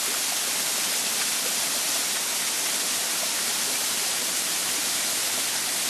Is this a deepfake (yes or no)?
yes